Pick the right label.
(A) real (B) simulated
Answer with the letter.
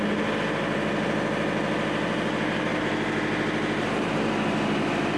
A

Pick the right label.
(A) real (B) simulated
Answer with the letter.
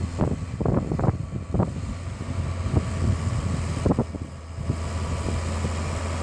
A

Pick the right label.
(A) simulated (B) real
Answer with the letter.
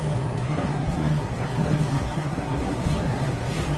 A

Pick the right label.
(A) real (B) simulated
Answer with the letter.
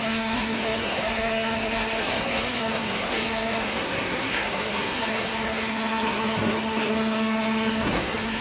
B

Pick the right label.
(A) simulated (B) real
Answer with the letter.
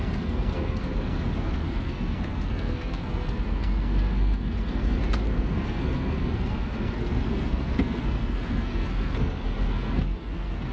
A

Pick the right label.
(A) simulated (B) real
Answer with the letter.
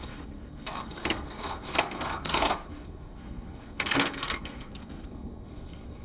A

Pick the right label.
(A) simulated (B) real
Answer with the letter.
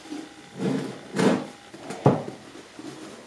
B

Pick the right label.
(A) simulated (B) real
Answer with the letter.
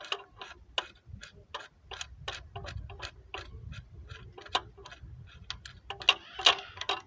B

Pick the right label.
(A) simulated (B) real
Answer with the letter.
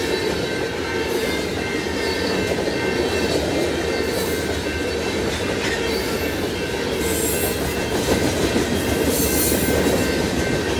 B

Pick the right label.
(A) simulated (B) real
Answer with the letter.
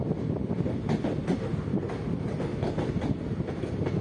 B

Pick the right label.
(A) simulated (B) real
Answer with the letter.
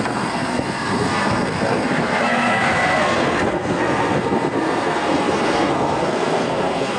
A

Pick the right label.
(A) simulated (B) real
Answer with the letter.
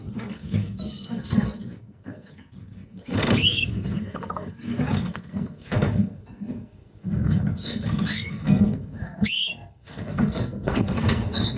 A